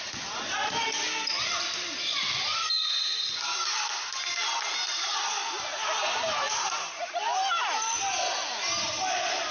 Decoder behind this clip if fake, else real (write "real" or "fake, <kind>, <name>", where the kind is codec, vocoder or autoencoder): real